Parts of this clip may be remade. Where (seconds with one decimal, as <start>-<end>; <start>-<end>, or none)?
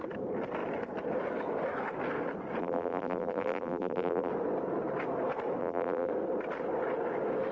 2.6-4.3; 5.6-6.1